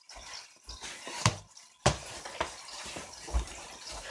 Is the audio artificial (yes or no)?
no